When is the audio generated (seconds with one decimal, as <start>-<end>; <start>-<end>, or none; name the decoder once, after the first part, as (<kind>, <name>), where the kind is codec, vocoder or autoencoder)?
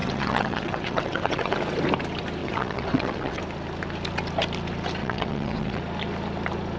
0.0-1.6 (vocoder, WaveNeXt); 2.4-3.4; 5.0-5.8